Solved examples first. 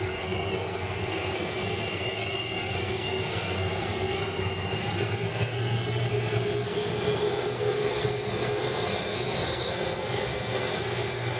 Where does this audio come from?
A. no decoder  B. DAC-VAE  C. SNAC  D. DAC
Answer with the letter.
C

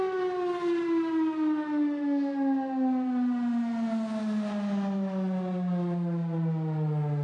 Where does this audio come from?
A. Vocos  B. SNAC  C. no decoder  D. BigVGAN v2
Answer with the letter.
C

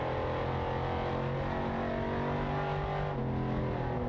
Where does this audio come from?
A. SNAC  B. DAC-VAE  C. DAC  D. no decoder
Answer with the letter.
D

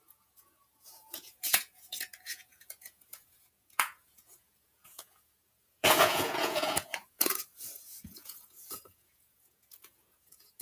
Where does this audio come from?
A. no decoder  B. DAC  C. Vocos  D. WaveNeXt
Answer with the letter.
C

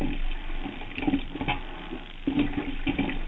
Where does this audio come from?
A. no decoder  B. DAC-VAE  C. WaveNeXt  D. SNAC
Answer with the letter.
A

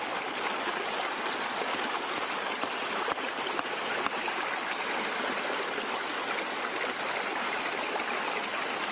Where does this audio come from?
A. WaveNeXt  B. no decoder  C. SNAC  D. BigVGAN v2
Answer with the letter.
B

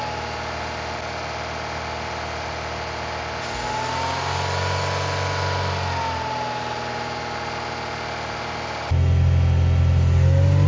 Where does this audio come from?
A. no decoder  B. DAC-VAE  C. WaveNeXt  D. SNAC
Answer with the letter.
A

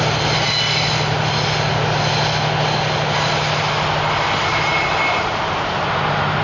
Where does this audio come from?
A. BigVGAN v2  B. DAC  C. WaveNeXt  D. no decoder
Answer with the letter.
D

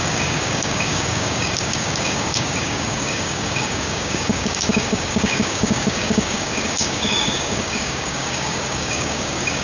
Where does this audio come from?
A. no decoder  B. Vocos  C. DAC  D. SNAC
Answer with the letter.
C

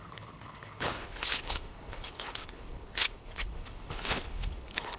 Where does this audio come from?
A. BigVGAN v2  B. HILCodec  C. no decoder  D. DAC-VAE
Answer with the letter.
B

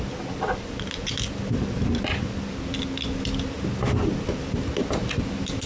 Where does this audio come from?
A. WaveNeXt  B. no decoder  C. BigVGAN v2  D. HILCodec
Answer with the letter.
B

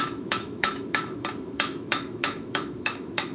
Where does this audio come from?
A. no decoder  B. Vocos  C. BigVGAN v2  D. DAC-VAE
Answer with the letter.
D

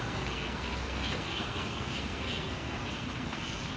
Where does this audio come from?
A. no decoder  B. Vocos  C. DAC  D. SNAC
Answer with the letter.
D